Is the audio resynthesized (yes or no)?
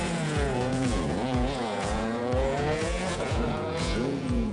yes